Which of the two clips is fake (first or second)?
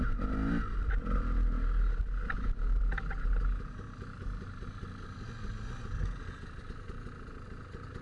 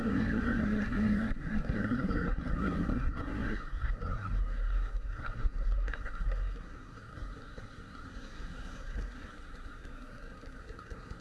second